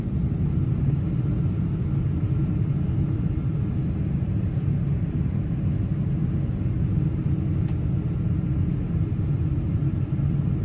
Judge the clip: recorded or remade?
recorded